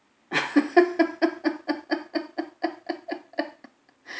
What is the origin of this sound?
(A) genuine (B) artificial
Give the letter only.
A